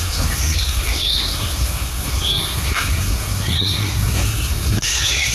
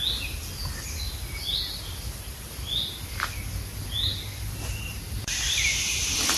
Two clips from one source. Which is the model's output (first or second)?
first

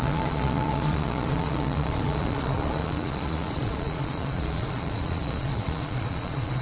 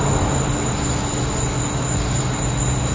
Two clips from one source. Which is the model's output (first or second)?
first